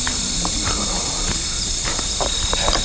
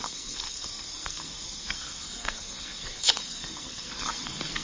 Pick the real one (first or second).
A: first